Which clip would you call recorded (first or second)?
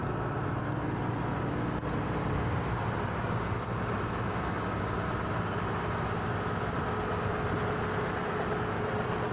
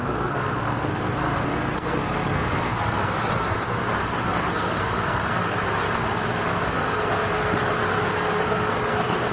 first